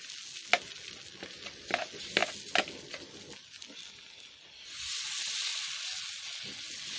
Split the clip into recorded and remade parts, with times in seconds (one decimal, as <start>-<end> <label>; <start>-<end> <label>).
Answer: 0.0-7.0 recorded